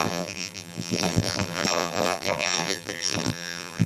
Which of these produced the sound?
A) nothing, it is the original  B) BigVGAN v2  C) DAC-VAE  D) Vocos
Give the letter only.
B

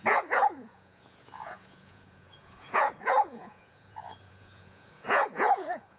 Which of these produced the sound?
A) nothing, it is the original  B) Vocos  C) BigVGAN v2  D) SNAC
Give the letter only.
B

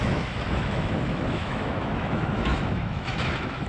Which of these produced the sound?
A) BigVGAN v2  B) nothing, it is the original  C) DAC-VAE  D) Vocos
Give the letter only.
C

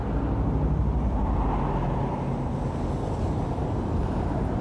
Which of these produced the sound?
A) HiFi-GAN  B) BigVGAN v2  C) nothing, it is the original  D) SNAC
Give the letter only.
C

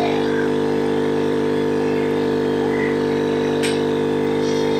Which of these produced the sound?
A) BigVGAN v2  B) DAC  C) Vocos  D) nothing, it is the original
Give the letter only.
A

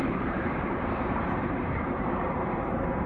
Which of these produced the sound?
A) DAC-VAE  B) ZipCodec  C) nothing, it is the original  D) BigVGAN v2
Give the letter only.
D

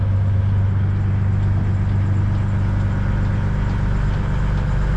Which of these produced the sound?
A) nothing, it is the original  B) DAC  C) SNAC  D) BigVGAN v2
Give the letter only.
A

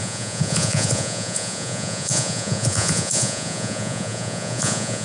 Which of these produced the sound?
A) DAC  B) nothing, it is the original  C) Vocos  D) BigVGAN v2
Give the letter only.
C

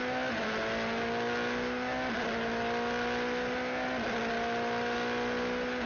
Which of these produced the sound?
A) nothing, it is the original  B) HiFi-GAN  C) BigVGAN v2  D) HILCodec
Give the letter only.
A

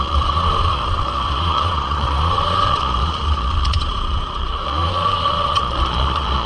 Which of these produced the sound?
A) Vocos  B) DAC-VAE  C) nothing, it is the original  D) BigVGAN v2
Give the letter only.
A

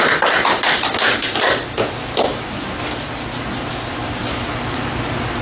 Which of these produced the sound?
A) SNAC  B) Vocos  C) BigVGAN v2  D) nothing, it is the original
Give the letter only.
D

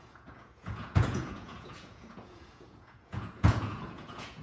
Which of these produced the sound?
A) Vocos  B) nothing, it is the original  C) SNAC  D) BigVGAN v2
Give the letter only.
A